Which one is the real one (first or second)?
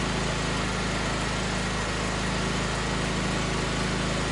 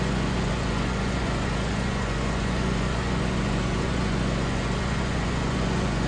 first